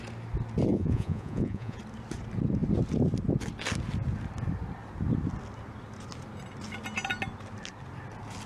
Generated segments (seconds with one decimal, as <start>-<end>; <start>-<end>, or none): 0.7-1.8